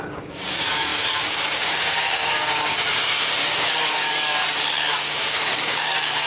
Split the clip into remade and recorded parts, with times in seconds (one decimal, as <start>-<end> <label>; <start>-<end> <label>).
0.0-4.4 remade; 4.4-4.9 recorded; 4.9-6.3 remade

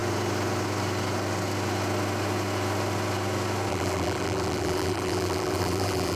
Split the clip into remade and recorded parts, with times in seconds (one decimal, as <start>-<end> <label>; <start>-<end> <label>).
0.0-3.7 recorded; 3.7-6.2 remade

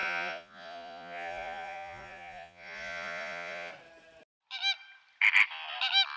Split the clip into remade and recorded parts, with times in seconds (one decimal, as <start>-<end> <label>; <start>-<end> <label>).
0.0-3.7 remade; 3.7-6.2 recorded

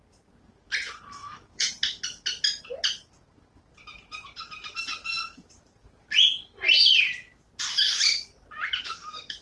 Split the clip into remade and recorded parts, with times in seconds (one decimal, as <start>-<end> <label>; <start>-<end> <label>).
0.0-1.2 recorded; 1.2-1.7 remade; 1.7-9.4 recorded

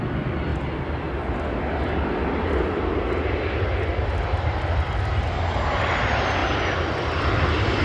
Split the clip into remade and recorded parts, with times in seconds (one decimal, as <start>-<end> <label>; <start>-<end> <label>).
0.0-7.8 recorded

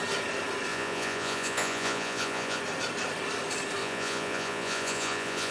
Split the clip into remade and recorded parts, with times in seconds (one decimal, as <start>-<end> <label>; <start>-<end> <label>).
0.0-0.7 recorded; 0.7-2.6 remade; 2.6-3.8 recorded; 3.8-5.5 remade

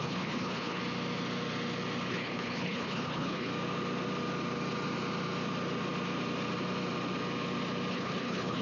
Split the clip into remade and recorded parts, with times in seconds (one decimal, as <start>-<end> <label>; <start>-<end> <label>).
0.0-0.8 remade; 0.8-2.1 recorded; 2.1-3.5 remade; 3.5-7.9 recorded; 7.9-8.6 remade